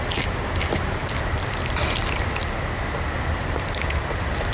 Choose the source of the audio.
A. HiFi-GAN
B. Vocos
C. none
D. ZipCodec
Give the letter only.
C